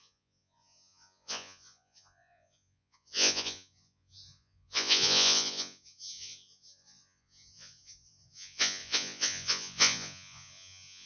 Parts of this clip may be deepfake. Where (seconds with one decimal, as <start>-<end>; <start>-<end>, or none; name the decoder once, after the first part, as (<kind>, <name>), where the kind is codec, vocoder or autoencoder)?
0.0-11.1 (vocoder, Vocos)